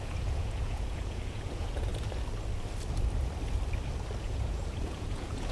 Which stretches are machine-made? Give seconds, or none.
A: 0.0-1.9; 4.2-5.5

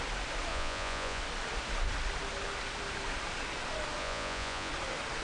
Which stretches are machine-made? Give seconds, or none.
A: 0.5-1.2; 4.0-4.7

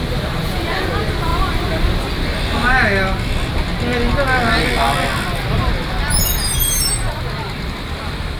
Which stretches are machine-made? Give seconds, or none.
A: 0.4-0.9

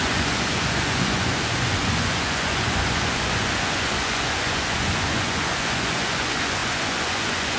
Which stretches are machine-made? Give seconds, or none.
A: 0.0-7.6

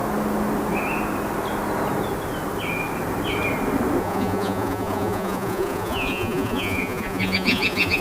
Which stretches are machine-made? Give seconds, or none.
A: 4.0-8.0